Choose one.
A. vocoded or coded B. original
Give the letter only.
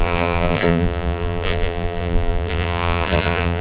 A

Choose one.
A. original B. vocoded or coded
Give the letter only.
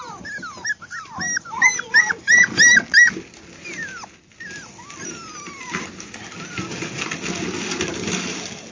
A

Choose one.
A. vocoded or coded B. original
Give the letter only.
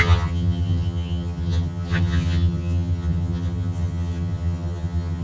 A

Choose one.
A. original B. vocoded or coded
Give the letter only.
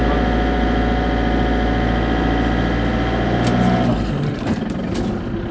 A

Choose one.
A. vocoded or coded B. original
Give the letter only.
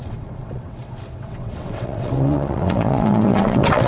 A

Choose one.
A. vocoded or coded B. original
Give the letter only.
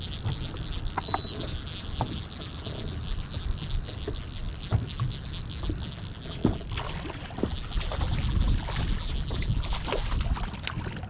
B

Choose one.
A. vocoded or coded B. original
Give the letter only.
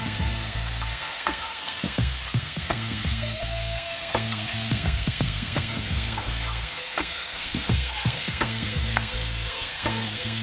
A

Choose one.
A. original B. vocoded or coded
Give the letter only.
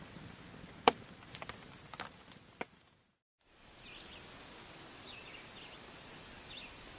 A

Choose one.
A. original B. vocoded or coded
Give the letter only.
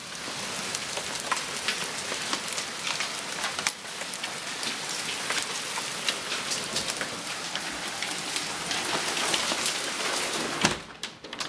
A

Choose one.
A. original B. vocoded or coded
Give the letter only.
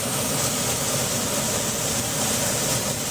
B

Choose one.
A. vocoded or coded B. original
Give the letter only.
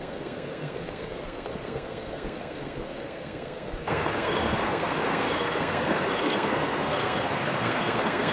A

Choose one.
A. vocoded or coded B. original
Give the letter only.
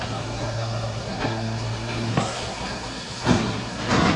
A